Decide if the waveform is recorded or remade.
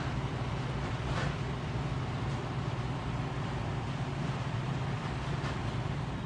remade